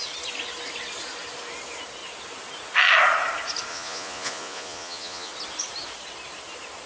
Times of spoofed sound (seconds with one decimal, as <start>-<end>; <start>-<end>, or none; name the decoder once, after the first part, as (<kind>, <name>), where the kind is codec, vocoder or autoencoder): 3.7-5.3 (vocoder, Vocos)

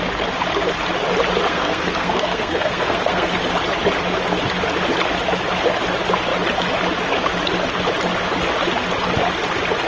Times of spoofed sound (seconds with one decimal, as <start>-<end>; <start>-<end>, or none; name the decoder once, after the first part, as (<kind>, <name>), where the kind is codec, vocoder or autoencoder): 1.5-3.3 (codec, SNAC)

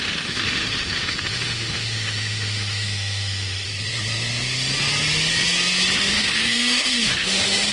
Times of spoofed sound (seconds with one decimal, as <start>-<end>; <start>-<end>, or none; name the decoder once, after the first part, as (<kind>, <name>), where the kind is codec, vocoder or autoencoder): 0.0-3.7 (autoencoder, DAC-VAE); 6.1-7.7

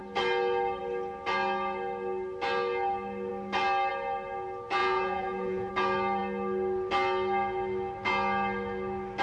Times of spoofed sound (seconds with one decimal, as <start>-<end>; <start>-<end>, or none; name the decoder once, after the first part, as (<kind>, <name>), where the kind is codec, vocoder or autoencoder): 4.8-5.7 (vocoder, Vocos)

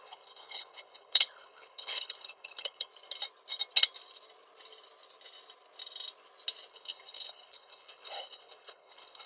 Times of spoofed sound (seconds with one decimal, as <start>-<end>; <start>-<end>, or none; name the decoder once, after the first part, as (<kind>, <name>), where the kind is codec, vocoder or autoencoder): 0.0-2.9 (codec, HILCodec); 6.7-9.3

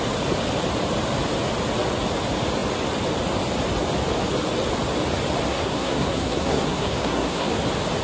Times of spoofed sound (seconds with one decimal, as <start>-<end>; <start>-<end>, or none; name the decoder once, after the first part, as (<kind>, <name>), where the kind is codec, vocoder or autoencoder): 5.5-7.5 (codec, SNAC)

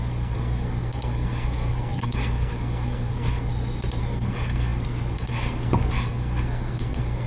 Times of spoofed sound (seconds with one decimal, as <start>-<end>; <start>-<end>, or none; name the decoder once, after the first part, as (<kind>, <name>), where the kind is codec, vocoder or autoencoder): 0.0-3.5 (codec, SNAC); 4.0-7.3